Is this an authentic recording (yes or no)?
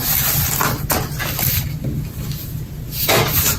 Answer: yes